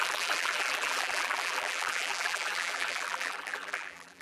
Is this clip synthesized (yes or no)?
yes